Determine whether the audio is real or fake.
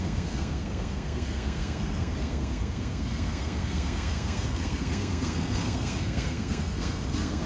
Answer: fake